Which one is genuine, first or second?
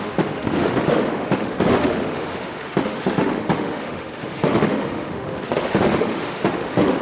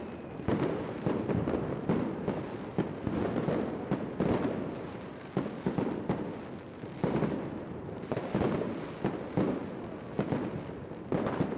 second